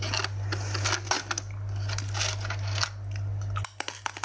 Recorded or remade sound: recorded